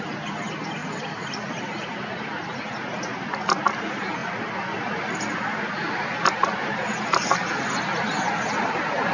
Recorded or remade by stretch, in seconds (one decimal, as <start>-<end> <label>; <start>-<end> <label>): 0.0-0.8 recorded; 0.8-2.3 remade; 2.3-4.2 recorded; 4.2-7.5 remade; 7.5-9.1 recorded